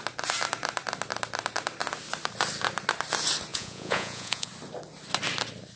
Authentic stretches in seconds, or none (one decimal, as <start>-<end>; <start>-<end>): 0.0-3.5; 4.5-5.8